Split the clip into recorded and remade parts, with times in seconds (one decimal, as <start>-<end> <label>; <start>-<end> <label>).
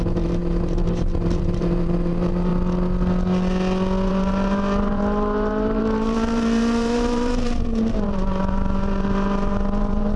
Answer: 0.0-2.5 remade; 2.5-4.1 recorded; 4.1-10.2 remade